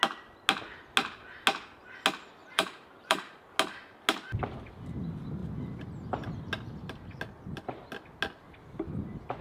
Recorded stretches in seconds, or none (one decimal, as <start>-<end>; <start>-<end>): 0.0-2.4; 3.5-9.4